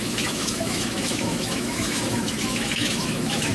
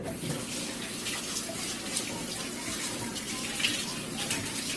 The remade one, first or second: first